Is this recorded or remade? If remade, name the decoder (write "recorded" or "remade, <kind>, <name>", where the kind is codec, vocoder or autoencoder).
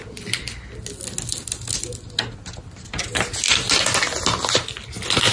recorded